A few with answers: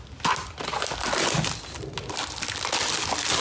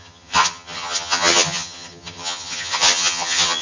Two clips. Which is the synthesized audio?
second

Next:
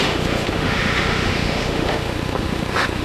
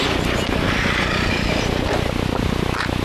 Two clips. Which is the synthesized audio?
first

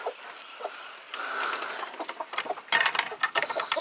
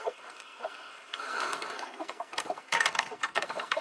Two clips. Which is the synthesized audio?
second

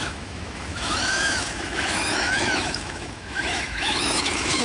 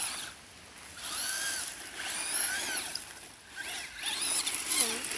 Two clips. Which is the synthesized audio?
first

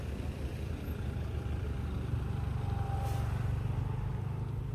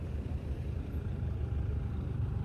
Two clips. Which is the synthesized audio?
second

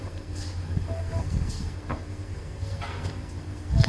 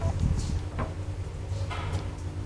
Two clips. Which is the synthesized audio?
first